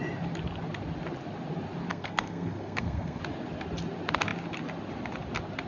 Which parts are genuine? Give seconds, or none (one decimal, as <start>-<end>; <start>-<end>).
0.0-1.9; 3.2-5.7